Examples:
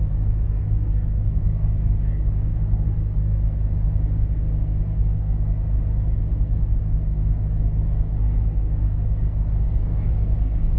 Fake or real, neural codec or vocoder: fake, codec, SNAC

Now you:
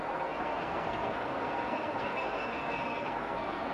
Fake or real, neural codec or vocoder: fake, codec, SNAC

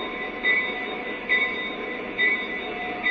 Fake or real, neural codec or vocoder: fake, vocoder, BigVGAN v2